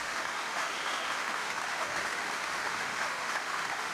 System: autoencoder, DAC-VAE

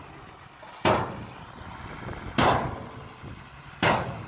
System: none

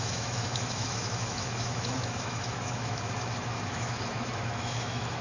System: autoencoder, DAC-VAE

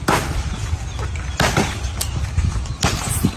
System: none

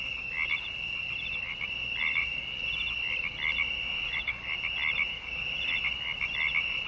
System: none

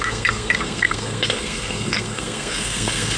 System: codec, SNAC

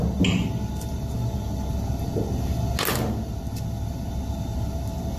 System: none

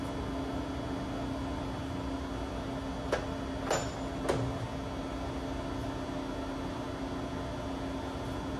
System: none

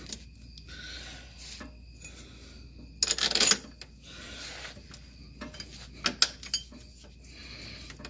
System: none